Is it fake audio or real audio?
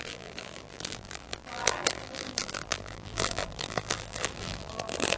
fake